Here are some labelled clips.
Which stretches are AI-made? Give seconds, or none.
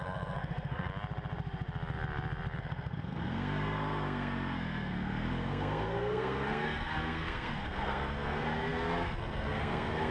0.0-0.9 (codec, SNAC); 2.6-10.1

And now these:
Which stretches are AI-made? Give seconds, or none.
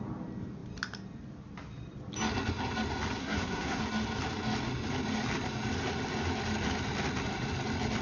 3.2-3.8 (codec, SNAC)